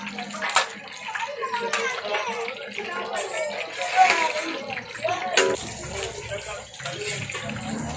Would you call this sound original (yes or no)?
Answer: yes